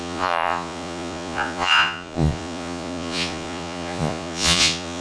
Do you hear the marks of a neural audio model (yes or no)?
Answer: yes